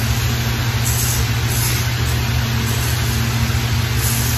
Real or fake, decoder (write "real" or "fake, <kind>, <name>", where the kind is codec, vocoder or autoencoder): real